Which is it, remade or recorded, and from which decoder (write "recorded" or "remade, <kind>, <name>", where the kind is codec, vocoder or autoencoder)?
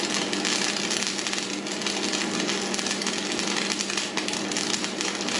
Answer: recorded